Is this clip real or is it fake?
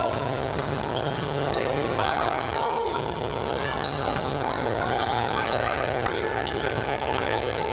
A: fake